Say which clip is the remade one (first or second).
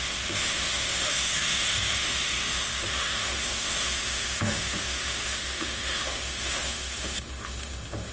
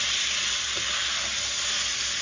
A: first